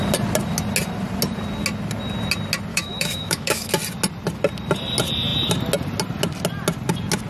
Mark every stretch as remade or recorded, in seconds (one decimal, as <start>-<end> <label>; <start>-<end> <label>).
0.0-2.7 recorded; 2.7-3.7 remade; 3.7-7.3 recorded